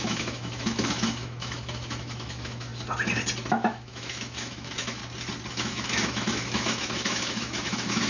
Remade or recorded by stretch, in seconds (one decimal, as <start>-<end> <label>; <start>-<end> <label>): 0.0-2.7 remade; 2.7-3.5 recorded; 3.5-5.0 remade; 5.0-5.5 recorded; 5.5-8.1 remade

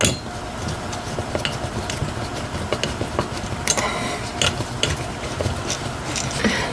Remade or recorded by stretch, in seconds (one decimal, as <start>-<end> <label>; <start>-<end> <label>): 0.0-6.7 recorded

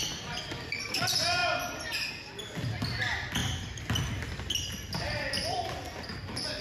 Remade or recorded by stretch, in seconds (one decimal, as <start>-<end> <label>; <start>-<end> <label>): 0.0-6.6 recorded